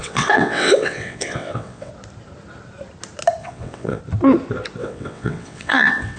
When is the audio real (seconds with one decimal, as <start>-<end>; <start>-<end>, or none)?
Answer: 1.9-3.4; 4.0-4.8